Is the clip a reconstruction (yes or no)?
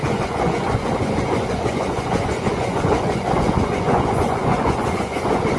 yes